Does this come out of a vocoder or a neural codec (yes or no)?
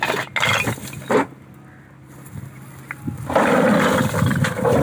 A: no